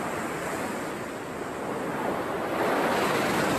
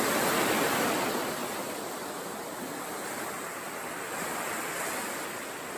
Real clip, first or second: first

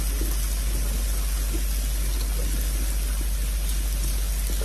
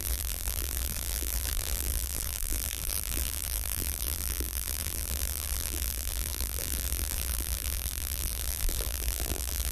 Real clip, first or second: first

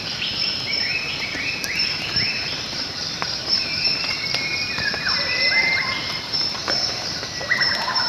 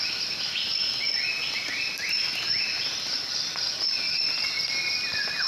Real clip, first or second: second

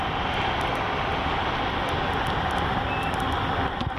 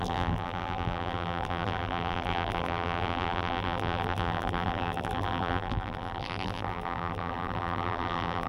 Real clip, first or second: first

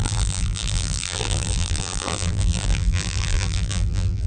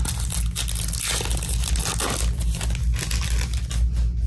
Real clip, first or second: second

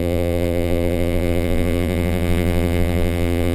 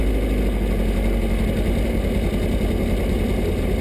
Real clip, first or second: second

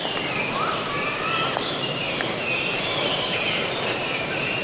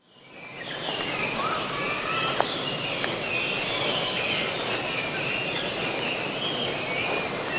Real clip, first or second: second